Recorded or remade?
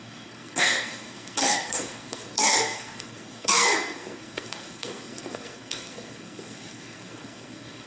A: remade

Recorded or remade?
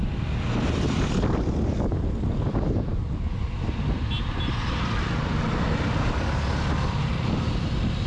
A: recorded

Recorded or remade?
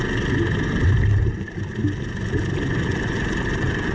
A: recorded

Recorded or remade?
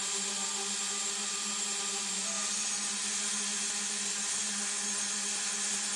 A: recorded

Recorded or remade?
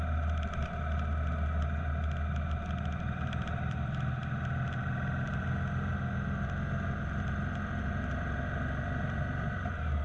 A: recorded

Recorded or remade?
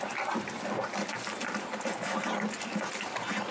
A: recorded